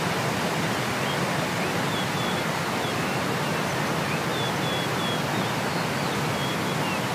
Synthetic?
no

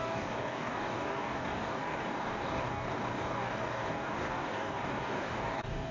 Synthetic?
yes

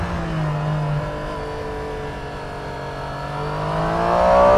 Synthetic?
no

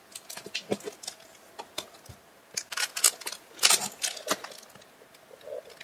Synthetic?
no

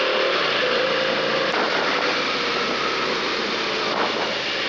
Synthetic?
no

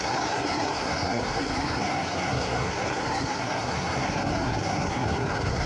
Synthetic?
yes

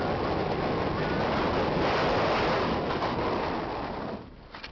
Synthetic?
no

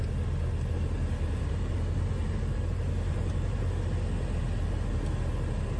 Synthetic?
no